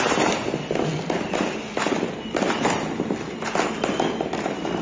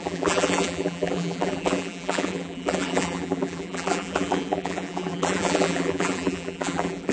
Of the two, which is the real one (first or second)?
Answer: first